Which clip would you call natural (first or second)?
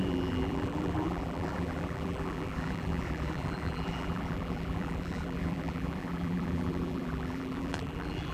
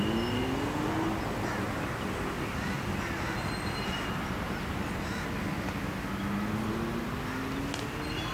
second